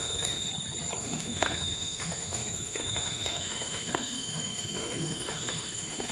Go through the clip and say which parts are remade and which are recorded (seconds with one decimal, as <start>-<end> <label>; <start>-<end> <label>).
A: 0.0-0.5 remade; 0.5-1.0 recorded; 1.0-6.1 remade